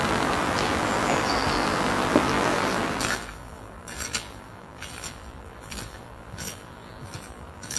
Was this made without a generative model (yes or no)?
no